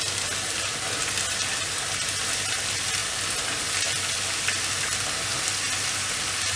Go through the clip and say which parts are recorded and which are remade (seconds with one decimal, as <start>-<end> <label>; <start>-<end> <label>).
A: 0.0-6.6 recorded